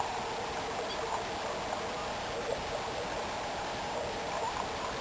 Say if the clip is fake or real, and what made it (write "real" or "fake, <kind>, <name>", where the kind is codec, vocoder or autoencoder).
real